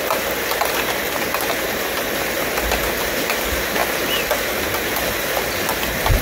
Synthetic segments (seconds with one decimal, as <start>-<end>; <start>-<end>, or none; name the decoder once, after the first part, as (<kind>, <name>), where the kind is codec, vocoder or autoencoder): none